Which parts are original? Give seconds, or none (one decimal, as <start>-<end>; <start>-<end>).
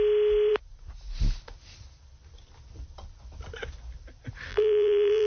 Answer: 0.0-4.5